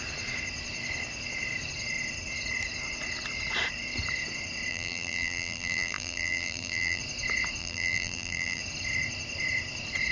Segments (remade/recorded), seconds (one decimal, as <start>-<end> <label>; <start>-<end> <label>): 0.0-4.7 recorded; 4.7-7.0 remade; 7.0-7.6 recorded; 7.6-8.6 remade; 8.6-10.1 recorded

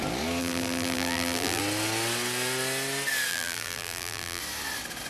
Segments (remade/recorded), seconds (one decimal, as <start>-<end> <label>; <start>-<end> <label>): 0.0-0.4 recorded; 0.4-1.6 remade; 1.6-3.3 recorded; 3.3-4.4 remade; 4.4-5.1 recorded

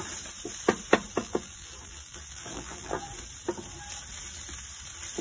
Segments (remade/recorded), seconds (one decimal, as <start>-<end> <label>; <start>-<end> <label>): 0.0-1.2 recorded; 1.2-3.1 remade; 3.1-5.2 recorded

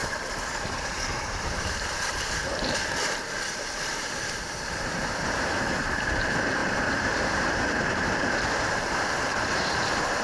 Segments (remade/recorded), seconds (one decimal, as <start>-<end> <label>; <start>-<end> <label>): 0.0-2.4 remade; 2.4-3.9 recorded; 3.9-10.2 remade

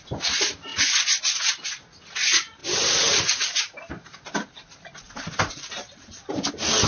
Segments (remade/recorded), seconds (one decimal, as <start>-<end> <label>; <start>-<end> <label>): 0.0-2.6 recorded; 2.6-6.5 remade; 6.5-6.9 recorded